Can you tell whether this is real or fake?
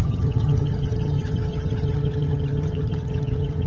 fake